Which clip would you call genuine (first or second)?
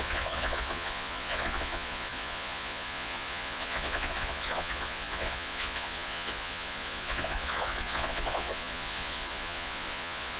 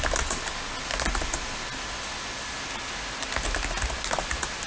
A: second